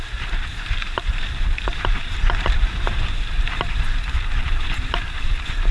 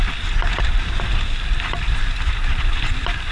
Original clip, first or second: second